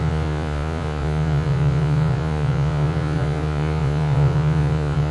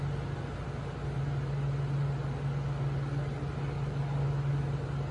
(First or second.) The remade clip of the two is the first